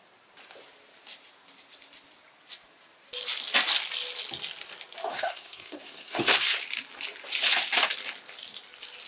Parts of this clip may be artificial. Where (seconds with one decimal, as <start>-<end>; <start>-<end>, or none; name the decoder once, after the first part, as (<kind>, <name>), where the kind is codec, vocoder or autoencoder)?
5.1-6.6 (codec, SNAC)